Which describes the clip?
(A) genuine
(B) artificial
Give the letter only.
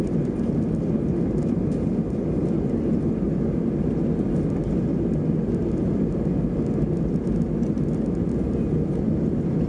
A